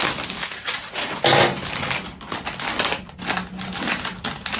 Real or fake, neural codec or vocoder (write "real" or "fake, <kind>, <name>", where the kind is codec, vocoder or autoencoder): real